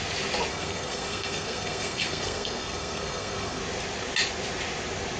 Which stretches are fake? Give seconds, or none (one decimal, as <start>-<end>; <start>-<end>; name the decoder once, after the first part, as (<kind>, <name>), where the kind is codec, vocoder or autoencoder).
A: 0.5-3.6 (codec, SNAC)